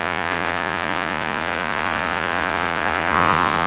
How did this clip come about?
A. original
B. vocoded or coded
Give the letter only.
B